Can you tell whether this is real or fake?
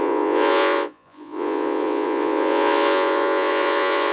fake